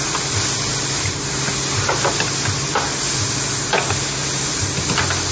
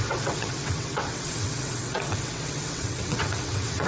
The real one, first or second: first